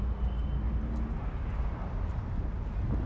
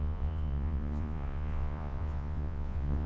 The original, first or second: first